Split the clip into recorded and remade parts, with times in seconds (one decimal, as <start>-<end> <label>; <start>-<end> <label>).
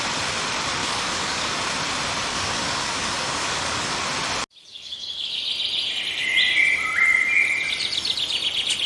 0.0-0.8 recorded; 0.8-1.6 remade; 1.6-2.3 recorded; 2.3-4.0 remade; 4.0-4.7 recorded; 4.7-5.5 remade; 5.5-8.9 recorded